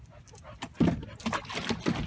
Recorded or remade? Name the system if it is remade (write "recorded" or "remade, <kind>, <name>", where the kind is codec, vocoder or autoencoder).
recorded